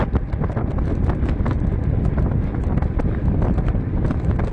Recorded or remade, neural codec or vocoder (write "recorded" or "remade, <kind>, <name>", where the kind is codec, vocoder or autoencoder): recorded